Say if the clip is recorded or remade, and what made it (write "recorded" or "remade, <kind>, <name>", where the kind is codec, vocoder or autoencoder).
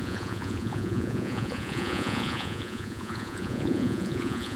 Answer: remade, vocoder, Vocos